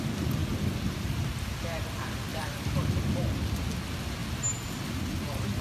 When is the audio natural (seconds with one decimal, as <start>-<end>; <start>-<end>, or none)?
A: 0.0-0.4; 1.4-2.3; 2.9-5.6